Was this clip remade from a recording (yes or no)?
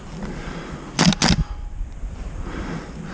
no